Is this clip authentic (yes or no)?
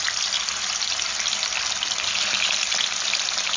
yes